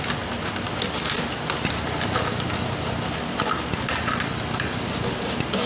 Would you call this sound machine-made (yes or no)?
no